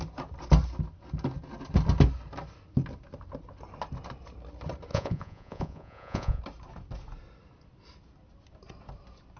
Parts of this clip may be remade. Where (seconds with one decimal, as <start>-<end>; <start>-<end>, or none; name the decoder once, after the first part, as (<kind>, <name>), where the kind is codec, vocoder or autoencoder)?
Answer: 4.9-6.4 (vocoder, Vocos)